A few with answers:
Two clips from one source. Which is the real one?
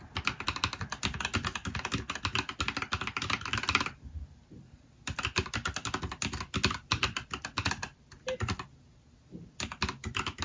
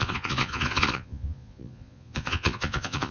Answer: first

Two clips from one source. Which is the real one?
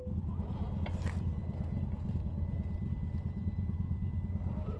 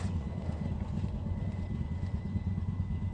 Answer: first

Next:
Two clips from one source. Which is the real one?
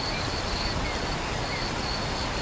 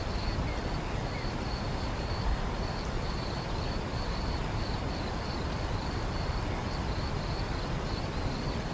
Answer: first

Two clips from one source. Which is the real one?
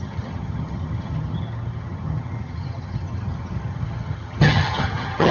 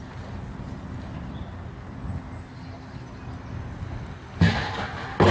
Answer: second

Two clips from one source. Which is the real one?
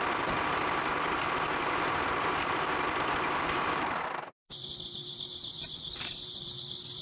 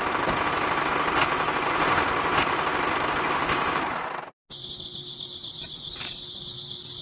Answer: second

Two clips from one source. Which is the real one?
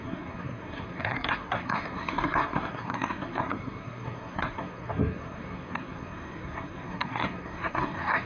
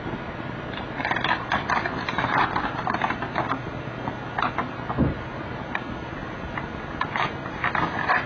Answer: second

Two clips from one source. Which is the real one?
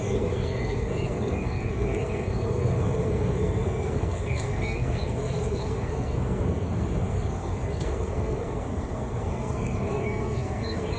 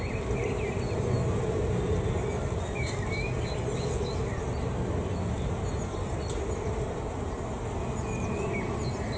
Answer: second